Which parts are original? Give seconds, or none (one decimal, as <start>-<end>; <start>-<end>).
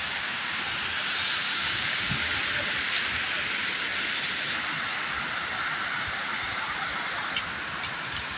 0.6-1.4; 2.3-8.4